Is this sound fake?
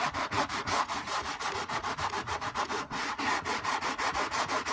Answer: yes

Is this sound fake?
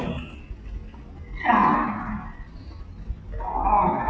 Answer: no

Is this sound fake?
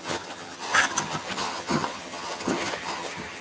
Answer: yes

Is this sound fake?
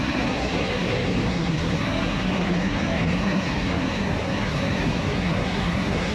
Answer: yes